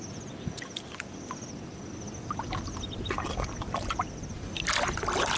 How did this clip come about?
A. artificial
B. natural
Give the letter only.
B